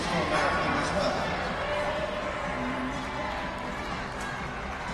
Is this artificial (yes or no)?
no